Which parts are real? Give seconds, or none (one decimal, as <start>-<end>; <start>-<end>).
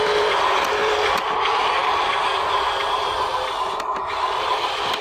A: 0.0-5.0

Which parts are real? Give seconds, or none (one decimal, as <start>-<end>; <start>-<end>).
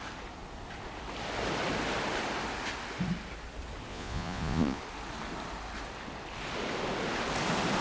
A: 0.0-3.9; 4.8-7.8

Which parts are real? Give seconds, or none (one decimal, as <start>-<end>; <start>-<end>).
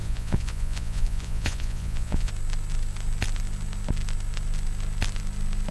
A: 2.3-5.7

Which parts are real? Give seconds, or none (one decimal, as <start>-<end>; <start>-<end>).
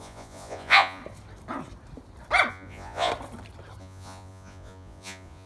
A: 1.0-2.5; 3.1-3.8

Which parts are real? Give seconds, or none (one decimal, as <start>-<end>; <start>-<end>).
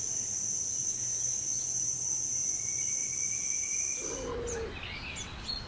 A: 0.0-0.8; 2.6-5.7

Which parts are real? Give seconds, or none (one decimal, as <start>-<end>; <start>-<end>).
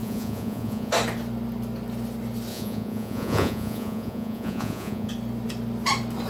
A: 0.9-2.5; 5.1-6.3